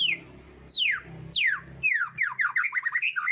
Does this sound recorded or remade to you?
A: recorded